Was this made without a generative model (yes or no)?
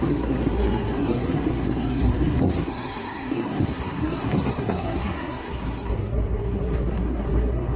no